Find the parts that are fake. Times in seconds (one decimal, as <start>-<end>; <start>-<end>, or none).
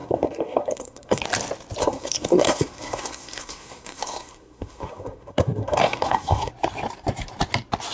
0.0-1.2; 1.8-6.5